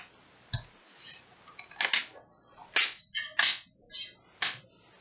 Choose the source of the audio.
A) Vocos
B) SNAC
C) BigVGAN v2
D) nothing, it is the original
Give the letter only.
D